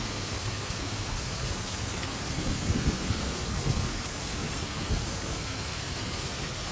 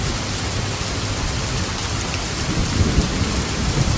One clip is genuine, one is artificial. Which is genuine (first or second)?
second